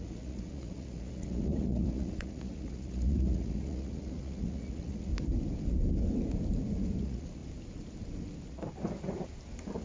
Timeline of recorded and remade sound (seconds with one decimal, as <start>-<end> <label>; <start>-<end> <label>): 0.0-5.1 remade; 5.1-7.0 recorded; 7.0-7.4 remade; 7.4-9.8 recorded